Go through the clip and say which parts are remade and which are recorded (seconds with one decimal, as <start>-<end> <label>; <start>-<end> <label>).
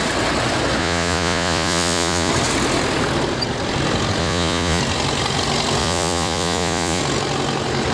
0.0-0.8 recorded; 0.8-2.3 remade; 2.3-4.2 recorded; 4.2-4.8 remade; 4.8-5.8 recorded; 5.8-7.0 remade; 7.0-7.9 recorded